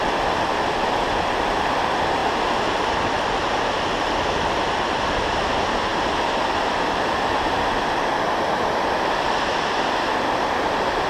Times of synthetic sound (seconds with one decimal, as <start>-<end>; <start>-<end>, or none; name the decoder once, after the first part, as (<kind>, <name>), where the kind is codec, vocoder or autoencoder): 0.0-2.2 (vocoder, BigVGAN v2); 5.1-11.1